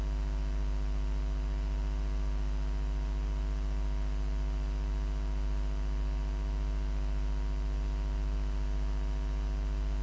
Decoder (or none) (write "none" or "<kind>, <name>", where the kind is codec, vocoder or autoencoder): none